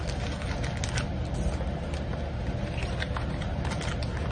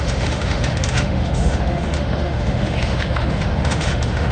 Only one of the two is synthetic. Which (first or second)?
second